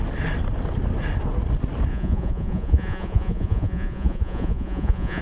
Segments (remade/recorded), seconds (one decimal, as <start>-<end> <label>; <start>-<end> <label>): 0.0-1.9 recorded; 1.9-5.2 remade